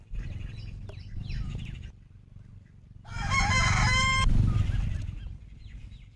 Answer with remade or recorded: recorded